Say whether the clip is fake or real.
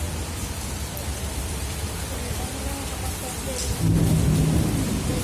real